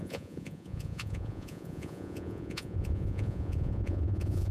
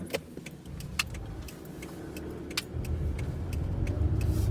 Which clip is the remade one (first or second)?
first